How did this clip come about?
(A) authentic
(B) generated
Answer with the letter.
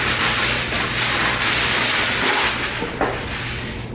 A